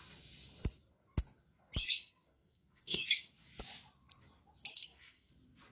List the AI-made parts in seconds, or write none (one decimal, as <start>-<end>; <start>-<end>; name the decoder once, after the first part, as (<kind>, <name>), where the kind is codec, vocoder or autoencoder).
1.8-3.3 (codec, SNAC); 4.7-5.3